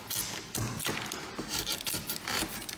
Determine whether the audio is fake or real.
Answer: real